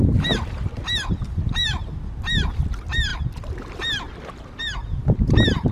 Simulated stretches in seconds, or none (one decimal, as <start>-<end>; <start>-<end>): none